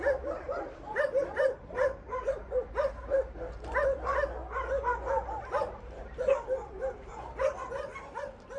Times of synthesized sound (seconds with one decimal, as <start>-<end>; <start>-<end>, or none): 0.0-4.4; 5.3-7.1; 8.1-8.6